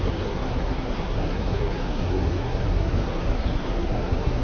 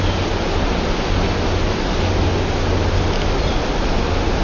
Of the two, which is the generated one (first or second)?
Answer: first